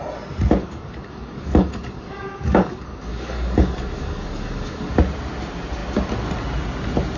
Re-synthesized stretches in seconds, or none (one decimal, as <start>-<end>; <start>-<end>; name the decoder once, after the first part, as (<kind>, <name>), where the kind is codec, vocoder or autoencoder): 0.6-4.9 (codec, DAC)